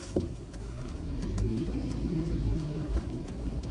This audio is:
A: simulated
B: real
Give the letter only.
A